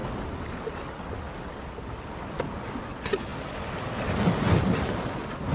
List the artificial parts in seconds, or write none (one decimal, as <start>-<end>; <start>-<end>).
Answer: none